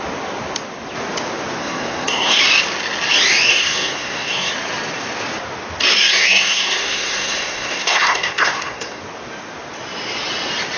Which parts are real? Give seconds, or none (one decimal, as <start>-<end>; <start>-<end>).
0.0-1.6; 2.4-3.5; 4.5-5.9; 9.0-10.8

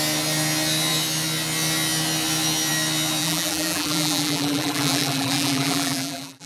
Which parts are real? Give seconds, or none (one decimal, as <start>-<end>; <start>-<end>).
0.0-3.2

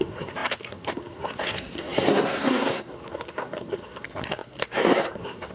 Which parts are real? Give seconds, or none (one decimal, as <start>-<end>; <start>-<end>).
none

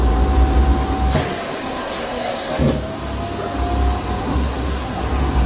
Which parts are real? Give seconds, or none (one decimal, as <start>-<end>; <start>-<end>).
0.0-1.6; 2.5-4.2; 5.0-5.5